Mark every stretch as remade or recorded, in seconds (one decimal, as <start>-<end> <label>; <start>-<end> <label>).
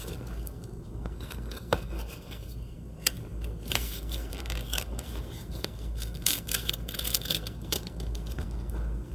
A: 0.0-9.1 remade